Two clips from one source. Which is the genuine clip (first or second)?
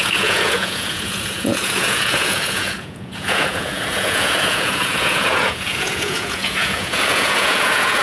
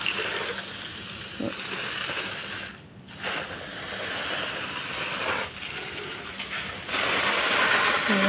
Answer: second